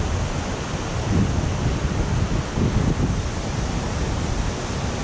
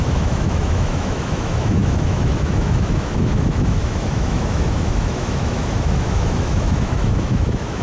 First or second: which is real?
first